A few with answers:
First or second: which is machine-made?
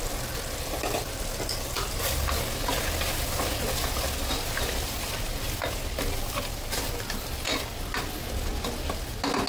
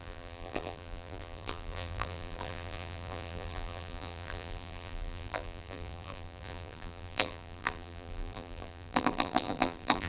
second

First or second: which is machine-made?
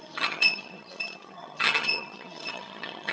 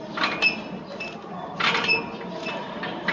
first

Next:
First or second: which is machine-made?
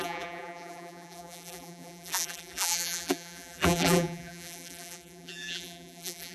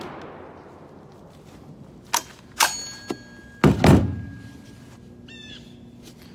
first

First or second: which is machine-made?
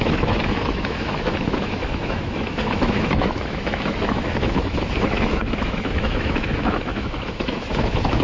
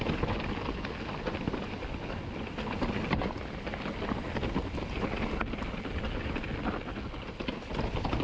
first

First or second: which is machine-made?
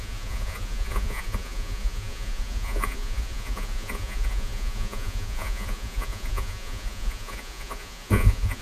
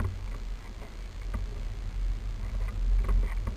first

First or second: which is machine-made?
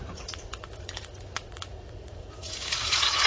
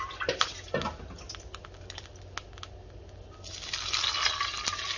first